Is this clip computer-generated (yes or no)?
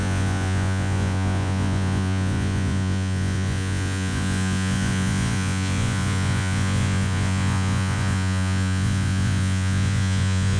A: yes